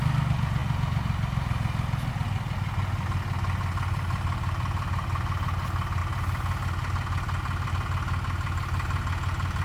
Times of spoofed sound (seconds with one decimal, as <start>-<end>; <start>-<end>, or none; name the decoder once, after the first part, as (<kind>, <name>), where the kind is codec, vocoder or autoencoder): none